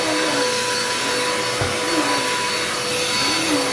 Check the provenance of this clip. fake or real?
real